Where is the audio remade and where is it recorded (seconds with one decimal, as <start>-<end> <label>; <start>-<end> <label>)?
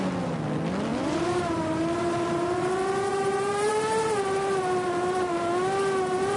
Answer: 0.0-0.9 recorded; 0.9-2.7 remade; 2.7-3.1 recorded; 3.1-3.7 remade; 3.7-6.4 recorded